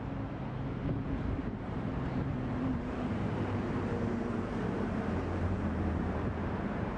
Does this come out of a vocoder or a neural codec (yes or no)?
yes